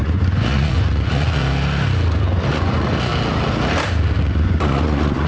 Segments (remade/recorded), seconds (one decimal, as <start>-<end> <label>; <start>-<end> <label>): 0.0-1.4 remade; 1.4-2.5 recorded; 2.5-3.1 remade; 3.1-4.2 recorded; 4.2-5.3 remade